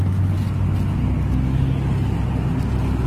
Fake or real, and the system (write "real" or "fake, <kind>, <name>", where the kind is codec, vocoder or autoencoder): real